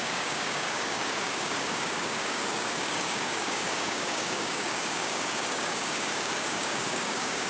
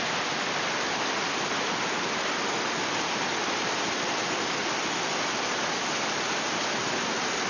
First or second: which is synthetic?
first